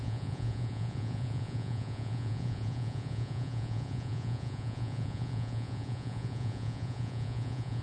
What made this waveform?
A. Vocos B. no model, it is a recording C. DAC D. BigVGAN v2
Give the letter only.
A